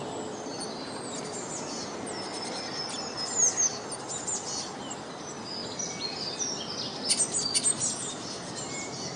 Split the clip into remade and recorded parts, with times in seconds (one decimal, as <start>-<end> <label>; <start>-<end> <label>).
0.0-9.2 recorded